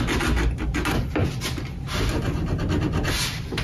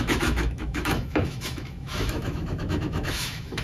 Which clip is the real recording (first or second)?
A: first